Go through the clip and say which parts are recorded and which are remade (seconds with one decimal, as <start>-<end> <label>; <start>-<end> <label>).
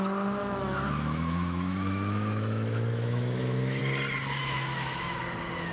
0.0-0.4 recorded; 0.4-3.8 remade; 3.8-4.4 recorded; 4.4-5.2 remade; 5.2-5.7 recorded